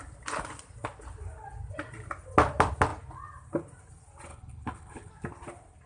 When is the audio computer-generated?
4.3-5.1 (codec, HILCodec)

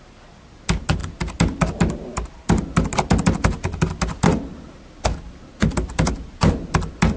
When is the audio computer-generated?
none

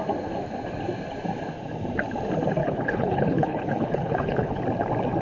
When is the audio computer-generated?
2.6-4.6 (codec, HILCodec)